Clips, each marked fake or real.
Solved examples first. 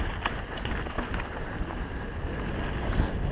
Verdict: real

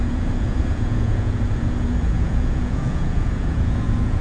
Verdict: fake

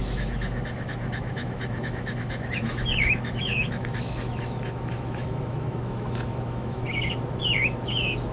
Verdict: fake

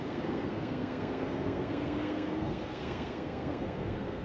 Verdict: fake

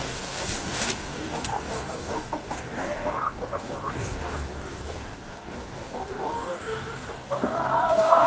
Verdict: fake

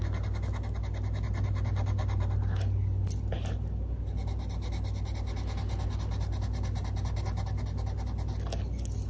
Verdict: real